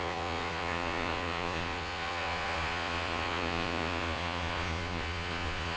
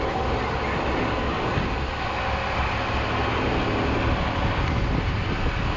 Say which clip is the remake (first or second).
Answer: first